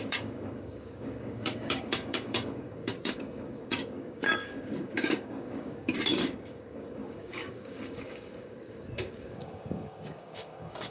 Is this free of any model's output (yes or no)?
no